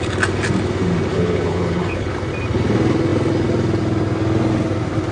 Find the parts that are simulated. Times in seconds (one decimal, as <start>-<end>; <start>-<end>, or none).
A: 1.1-2.1